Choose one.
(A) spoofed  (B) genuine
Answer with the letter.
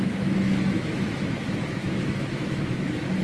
A